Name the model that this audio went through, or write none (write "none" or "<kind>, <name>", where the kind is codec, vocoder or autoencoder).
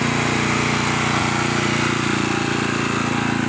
none